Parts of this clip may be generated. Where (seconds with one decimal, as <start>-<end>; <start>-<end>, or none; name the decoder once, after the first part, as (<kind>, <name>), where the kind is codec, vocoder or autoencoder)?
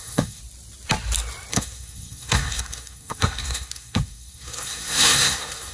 0.0-0.4 (codec, SNAC); 1.5-5.7